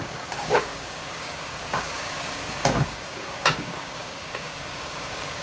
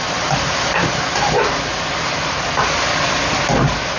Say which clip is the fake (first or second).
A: first